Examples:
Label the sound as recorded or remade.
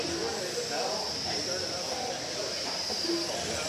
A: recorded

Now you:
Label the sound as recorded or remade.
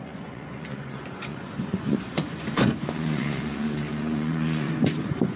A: remade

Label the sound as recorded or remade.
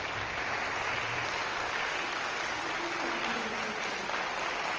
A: recorded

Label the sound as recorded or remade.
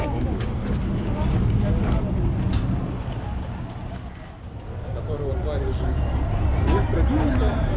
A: recorded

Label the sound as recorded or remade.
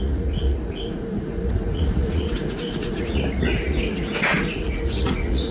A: remade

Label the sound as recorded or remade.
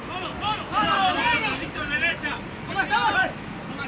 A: recorded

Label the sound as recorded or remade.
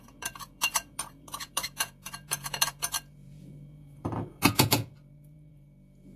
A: remade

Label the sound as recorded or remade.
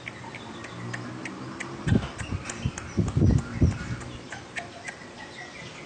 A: recorded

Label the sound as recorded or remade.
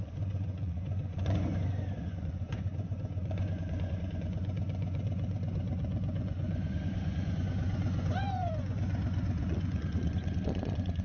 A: remade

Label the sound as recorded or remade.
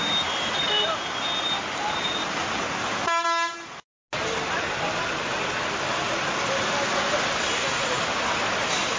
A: recorded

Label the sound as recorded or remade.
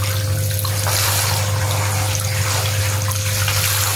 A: recorded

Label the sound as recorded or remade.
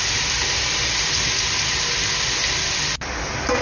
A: recorded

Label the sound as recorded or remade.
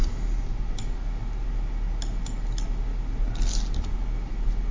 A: recorded